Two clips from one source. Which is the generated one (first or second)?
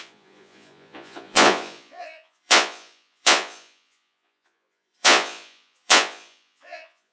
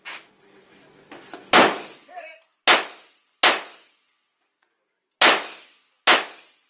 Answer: first